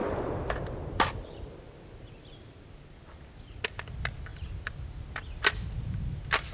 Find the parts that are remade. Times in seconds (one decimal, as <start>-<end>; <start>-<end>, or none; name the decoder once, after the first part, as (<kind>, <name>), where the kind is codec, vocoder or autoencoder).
none